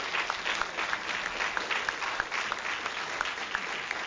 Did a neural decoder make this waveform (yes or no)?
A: no